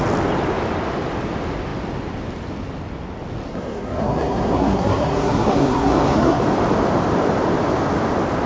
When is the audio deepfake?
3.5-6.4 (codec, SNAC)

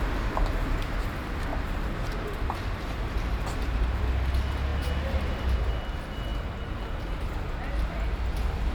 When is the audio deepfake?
1.5-4.0 (vocoder, BigVGAN v2)